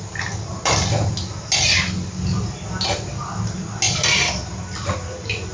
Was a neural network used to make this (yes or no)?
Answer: no